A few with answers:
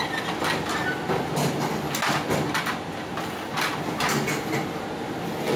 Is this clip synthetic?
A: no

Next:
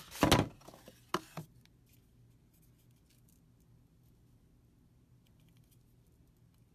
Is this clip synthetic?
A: no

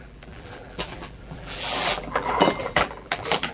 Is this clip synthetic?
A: yes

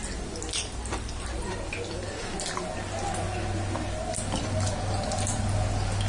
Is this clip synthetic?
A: no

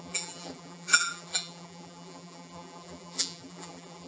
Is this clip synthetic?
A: yes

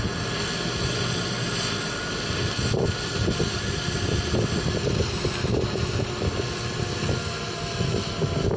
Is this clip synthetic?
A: no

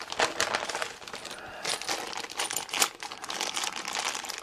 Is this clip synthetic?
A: no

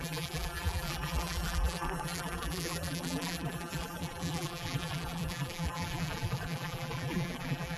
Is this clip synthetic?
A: yes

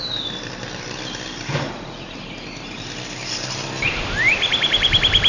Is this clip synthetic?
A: yes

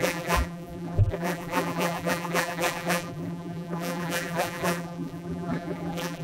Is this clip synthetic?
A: yes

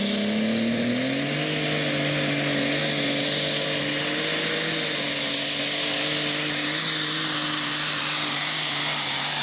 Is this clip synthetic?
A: no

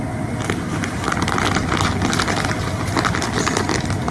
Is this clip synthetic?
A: no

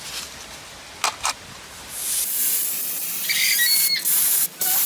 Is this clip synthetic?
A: no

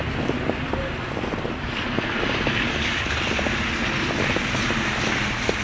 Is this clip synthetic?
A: no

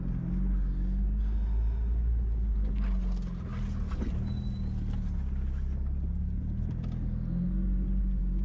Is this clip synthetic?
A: no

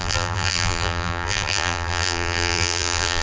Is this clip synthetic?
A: yes